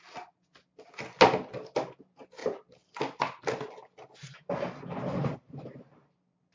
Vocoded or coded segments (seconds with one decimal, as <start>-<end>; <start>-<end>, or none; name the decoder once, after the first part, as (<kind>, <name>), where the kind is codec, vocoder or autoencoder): none